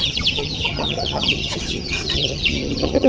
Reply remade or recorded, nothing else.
remade